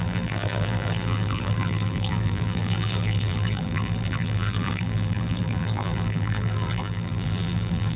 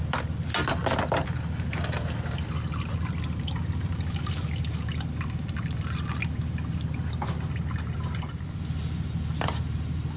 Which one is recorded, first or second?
second